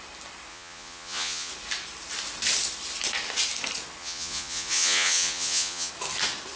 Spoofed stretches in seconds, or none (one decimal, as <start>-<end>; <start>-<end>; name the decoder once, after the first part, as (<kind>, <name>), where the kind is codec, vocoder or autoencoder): 0.5-1.5 (vocoder, Vocos); 4.0-5.9

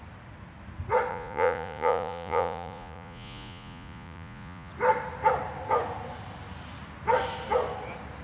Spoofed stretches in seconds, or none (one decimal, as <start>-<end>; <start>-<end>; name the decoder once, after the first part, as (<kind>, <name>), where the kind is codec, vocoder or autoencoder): 1.1-4.7 (vocoder, Vocos)

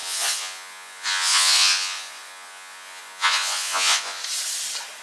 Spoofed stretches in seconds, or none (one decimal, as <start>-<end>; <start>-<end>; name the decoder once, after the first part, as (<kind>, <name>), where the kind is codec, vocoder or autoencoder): 0.0-4.2 (vocoder, Vocos)

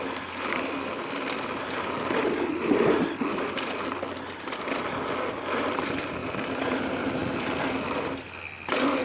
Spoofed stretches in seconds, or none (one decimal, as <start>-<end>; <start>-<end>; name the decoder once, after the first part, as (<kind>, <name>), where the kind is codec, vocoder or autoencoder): none